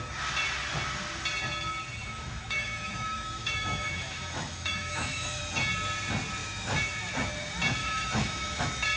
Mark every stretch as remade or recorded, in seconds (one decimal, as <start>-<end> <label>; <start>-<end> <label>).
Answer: 0.0-2.0 recorded; 2.0-5.4 remade; 5.4-6.4 recorded; 6.4-7.1 remade; 7.1-7.8 recorded; 7.8-8.6 remade; 8.6-9.0 recorded